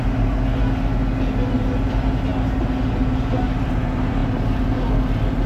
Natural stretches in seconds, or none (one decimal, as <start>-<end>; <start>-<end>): 0.0-5.5